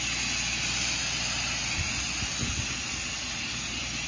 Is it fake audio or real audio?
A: real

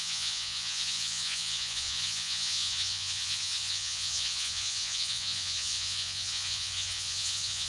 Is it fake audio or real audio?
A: fake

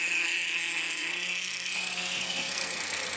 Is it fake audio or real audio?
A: fake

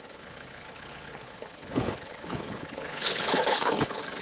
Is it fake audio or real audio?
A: fake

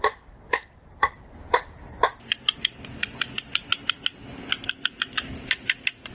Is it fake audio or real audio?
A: fake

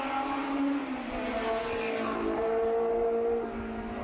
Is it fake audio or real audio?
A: real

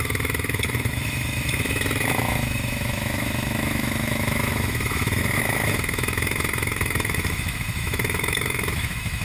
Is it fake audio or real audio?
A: fake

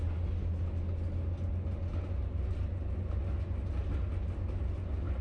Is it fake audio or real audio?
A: real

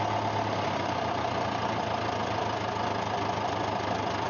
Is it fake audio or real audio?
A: real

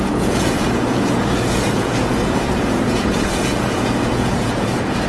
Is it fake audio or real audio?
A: fake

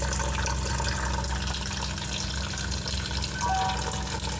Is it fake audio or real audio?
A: real